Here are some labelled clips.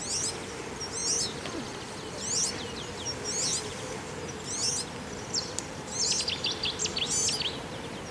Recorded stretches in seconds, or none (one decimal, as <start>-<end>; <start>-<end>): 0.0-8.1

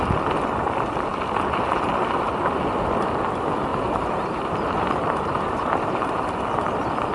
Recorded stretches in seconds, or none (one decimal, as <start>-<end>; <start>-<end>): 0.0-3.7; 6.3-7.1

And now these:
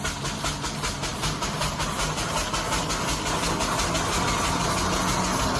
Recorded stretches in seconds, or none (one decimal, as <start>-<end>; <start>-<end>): 0.0-1.1; 2.5-5.6

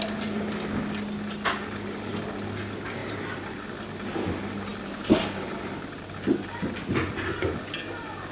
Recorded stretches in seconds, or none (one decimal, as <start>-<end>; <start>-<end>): 0.0-3.0; 3.7-8.3